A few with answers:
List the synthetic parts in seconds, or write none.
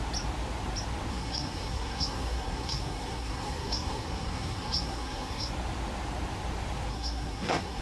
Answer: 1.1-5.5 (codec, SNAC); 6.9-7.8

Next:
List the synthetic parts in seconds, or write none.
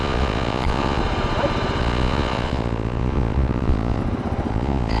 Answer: 0.0-1.0 (vocoder, Vocos); 1.8-4.0; 4.5-5.0